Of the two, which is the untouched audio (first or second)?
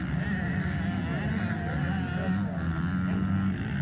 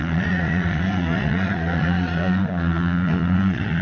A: first